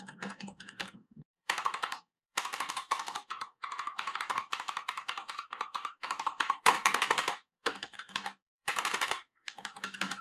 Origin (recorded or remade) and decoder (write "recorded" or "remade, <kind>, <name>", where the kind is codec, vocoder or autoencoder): remade, codec, DAC